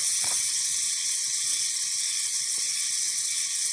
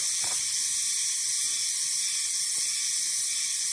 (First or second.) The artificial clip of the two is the first